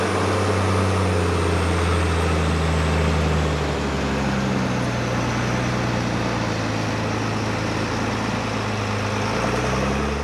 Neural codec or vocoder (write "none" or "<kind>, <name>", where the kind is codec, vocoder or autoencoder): none